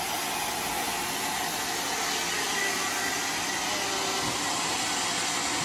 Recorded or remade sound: recorded